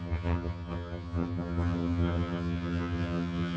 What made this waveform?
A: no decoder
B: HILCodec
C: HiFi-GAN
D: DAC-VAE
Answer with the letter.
C